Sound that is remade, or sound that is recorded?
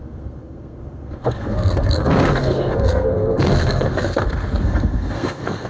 remade